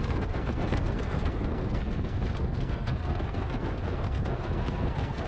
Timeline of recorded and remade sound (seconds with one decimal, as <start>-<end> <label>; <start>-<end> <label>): 0.0-5.3 remade

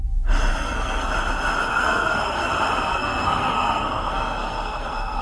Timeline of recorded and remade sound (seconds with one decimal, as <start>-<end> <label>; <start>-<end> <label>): 0.0-0.5 recorded; 0.5-1.1 remade; 1.1-1.7 recorded; 1.7-2.5 remade; 2.5-2.9 recorded; 2.9-5.2 remade

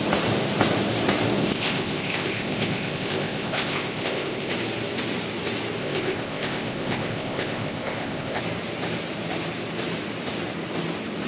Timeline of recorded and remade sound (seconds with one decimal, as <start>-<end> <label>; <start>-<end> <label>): 0.0-1.4 recorded; 1.4-4.5 remade; 4.5-5.8 recorded; 5.8-8.4 remade; 8.4-11.3 recorded

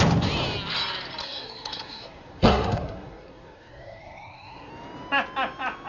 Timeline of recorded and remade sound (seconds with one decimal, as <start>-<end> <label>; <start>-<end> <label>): 0.0-1.2 recorded; 1.2-4.7 remade; 4.7-5.9 recorded

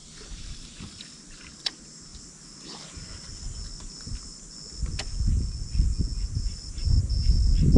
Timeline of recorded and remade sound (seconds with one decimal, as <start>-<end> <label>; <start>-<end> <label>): 0.0-2.1 remade; 2.1-6.3 recorded; 6.3-7.8 remade

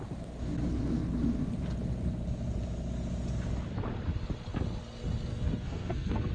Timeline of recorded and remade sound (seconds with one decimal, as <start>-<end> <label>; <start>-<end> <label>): 0.0-5.3 recorded; 5.3-6.3 remade

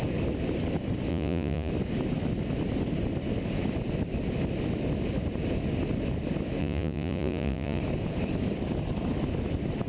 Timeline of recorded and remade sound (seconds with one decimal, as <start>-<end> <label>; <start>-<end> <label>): 0.0-1.1 recorded; 1.1-1.7 remade; 1.7-6.6 recorded; 6.6-7.8 remade; 7.8-9.9 recorded

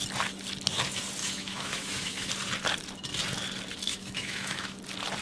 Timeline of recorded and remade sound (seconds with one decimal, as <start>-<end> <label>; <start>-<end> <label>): 0.0-1.2 recorded; 1.2-2.3 remade; 2.3-3.9 recorded; 3.9-4.8 remade; 4.8-5.2 recorded